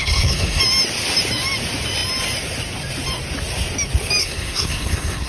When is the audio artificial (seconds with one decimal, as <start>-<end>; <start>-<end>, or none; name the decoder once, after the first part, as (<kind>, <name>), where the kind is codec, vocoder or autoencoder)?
0.0-0.6 (codec, SNAC); 4.2-5.3